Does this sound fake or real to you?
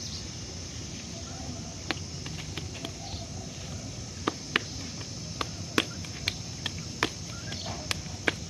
real